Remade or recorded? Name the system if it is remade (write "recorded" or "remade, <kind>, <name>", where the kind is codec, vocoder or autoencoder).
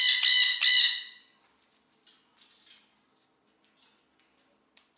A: recorded